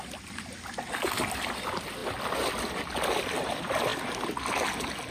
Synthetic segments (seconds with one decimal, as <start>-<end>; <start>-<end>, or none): none